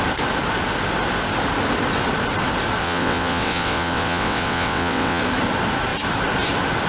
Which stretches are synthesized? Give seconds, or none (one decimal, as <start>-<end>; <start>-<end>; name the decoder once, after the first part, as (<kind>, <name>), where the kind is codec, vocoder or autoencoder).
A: 2.8-5.2 (vocoder, WaveNeXt)